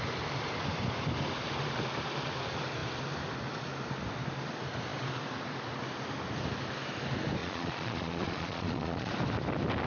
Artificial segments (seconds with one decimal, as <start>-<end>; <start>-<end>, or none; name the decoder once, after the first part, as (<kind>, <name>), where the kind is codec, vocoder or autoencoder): 7.4-9.1 (vocoder, Vocos)